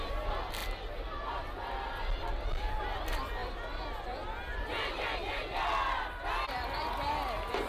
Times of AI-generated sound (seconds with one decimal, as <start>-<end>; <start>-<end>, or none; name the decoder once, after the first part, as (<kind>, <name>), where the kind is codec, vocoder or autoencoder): none